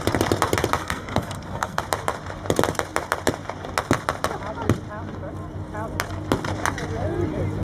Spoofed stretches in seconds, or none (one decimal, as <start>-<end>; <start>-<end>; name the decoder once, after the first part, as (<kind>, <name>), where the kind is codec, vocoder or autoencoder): 0.8-1.8 (codec, SNAC)

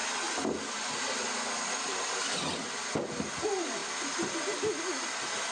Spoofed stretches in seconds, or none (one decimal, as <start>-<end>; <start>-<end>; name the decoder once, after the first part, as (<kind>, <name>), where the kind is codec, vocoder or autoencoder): none